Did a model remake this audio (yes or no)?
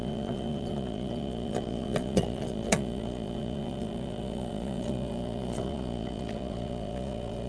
yes